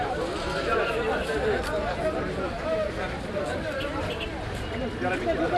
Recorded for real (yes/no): yes